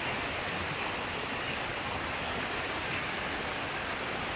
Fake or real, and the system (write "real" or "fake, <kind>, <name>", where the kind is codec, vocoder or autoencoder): real